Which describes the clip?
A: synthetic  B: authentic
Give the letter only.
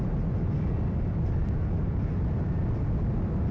B